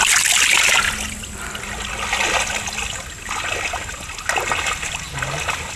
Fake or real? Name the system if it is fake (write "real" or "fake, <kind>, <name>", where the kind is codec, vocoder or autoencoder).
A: real